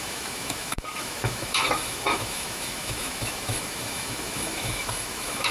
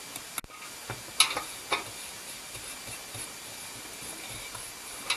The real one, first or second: second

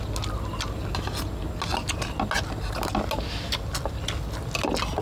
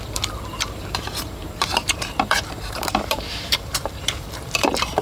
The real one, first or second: first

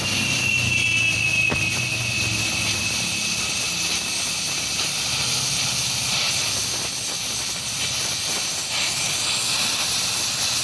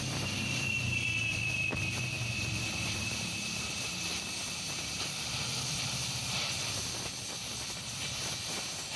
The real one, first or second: first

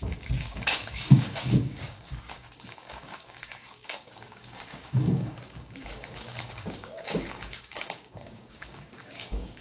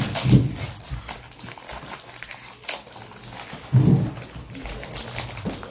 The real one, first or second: second